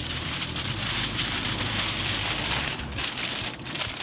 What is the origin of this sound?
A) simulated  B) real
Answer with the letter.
A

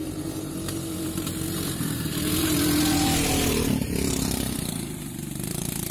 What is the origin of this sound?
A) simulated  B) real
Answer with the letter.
A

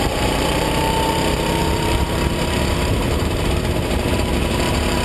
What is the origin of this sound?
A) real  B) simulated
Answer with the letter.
B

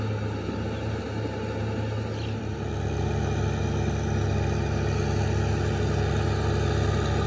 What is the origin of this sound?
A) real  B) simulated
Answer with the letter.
A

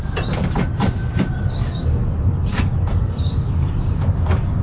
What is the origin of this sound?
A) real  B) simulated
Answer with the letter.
A